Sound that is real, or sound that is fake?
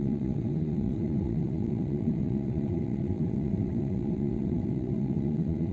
fake